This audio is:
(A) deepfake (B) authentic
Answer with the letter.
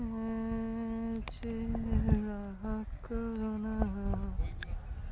B